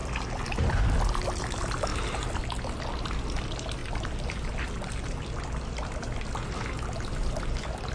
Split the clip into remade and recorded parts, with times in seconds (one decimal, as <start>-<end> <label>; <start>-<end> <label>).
0.0-3.8 recorded; 3.8-5.1 remade; 5.1-7.9 recorded